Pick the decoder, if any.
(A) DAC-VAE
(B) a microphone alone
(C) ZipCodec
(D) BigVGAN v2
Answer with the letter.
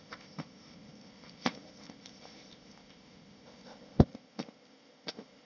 C